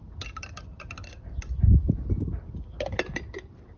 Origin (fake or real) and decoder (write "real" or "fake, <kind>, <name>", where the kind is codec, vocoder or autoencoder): real